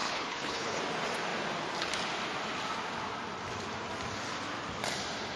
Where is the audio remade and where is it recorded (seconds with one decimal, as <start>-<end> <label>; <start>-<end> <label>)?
0.0-0.8 remade; 0.8-5.4 recorded